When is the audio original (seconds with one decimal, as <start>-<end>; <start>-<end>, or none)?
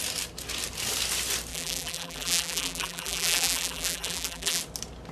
0.0-1.5; 4.6-5.1